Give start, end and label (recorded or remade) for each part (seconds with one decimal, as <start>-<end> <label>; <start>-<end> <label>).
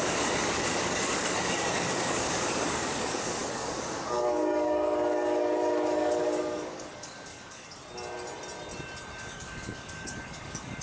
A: 0.0-7.8 remade; 7.8-9.1 recorded; 9.1-10.8 remade